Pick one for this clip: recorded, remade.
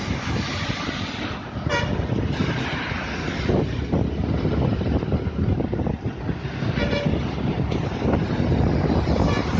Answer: recorded